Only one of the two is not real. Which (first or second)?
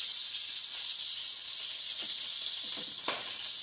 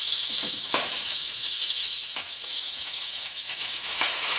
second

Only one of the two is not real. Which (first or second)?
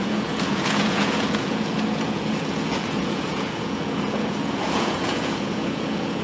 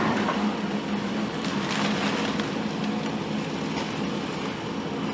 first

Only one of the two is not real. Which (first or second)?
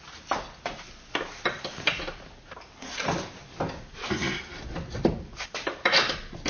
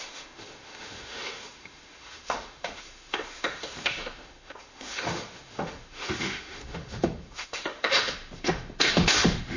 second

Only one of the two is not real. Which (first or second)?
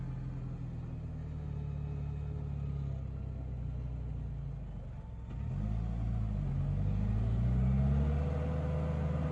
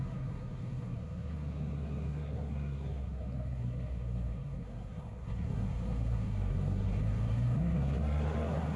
second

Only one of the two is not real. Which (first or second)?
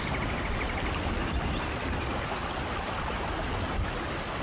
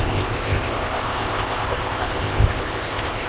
second